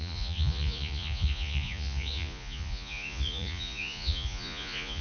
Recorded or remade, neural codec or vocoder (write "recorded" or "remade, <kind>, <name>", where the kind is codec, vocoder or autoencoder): remade, vocoder, Vocos